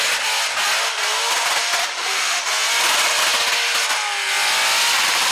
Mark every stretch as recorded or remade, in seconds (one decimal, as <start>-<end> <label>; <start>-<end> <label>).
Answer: 0.0-1.8 recorded; 1.8-2.4 remade; 2.4-5.3 recorded